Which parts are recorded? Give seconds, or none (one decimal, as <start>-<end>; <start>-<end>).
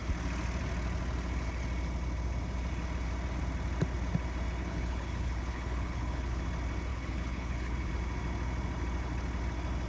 0.0-4.6; 6.4-6.9; 7.9-9.9